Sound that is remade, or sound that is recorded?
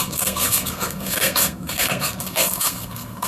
remade